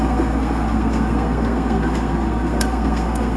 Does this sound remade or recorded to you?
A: remade